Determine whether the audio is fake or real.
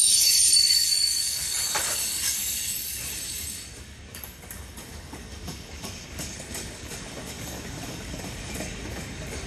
fake